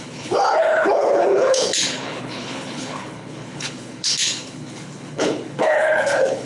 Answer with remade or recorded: remade